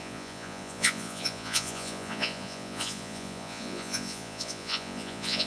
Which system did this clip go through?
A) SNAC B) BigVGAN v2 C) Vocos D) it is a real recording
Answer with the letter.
C